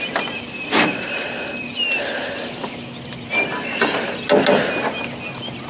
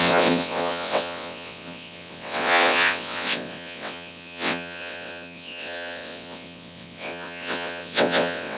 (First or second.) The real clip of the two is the first